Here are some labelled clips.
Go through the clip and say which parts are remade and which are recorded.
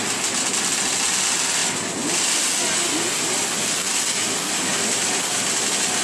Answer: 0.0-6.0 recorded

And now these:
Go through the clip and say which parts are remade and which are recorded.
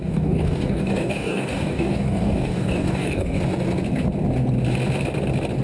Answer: 0.0-3.4 remade; 3.4-5.6 recorded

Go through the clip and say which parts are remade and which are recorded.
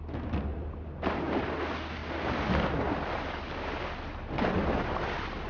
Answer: 0.0-5.5 recorded